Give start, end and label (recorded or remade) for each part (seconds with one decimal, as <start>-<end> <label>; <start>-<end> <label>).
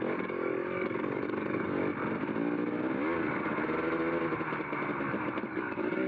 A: 0.0-1.8 remade; 1.8-5.5 recorded; 5.5-6.1 remade